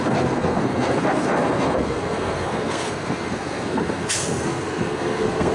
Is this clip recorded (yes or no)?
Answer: no